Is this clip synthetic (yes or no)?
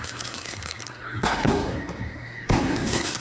yes